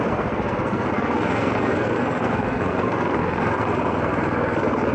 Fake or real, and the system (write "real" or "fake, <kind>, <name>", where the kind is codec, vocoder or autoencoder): fake, codec, SNAC